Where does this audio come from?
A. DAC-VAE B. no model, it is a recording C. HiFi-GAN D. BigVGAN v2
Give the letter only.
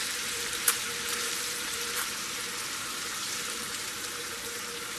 D